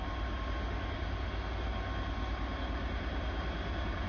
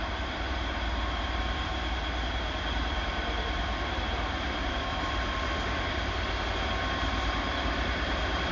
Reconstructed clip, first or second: second